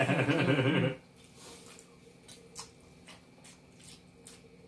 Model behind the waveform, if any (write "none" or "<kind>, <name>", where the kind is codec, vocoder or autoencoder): none